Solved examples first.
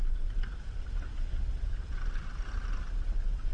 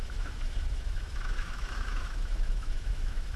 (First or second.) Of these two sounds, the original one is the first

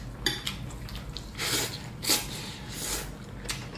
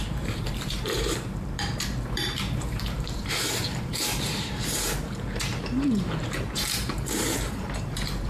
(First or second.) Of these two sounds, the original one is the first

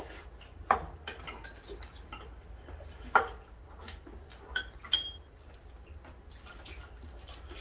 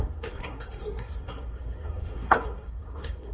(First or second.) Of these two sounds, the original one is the first